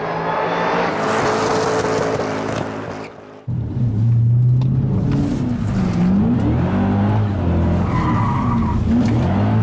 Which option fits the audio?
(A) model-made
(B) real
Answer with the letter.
B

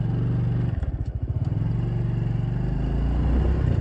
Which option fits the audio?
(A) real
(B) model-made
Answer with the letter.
A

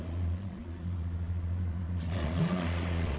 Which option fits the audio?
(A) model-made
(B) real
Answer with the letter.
A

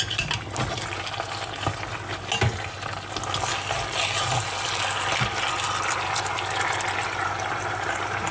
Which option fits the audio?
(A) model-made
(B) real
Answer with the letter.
B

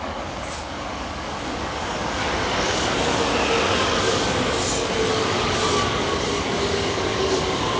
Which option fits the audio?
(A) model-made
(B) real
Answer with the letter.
A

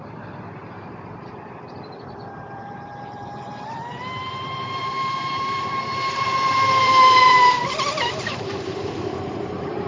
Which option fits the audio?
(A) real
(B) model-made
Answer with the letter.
B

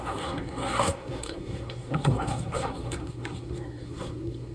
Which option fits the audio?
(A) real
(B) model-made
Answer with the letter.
B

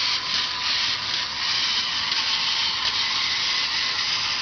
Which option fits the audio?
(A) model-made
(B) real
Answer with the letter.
B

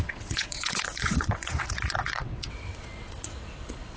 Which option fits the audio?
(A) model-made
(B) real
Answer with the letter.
A